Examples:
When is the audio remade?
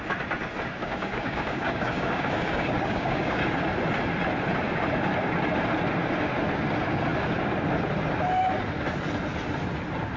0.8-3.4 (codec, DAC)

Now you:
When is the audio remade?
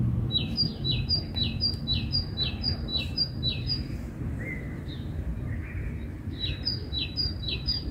0.0-1.4 (vocoder, BigVGAN v2); 2.2-5.3; 5.8-7.9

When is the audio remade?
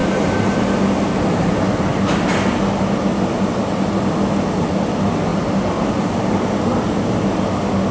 0.0-0.6 (vocoder, BigVGAN v2); 5.3-6.3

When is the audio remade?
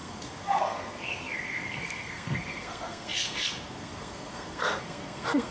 0.0-5.5 (codec, SNAC)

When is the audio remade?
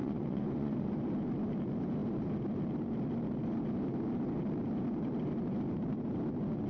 0.0-1.0 (vocoder, Vocos)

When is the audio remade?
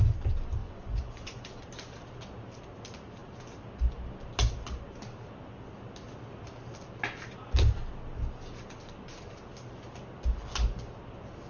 0.6-1.5 (vocoder, Vocos)